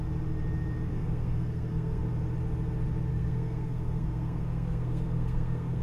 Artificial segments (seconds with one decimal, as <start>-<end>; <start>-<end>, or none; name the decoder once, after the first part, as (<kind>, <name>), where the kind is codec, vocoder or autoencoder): 0.9-2.0 (codec, SNAC); 3.1-5.8